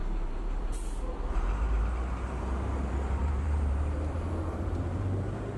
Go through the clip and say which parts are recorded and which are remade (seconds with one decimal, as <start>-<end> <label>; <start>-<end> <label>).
0.0-5.6 remade